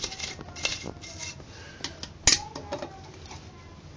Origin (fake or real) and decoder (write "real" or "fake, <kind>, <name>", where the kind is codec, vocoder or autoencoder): real